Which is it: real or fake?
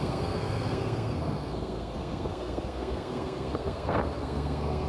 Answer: fake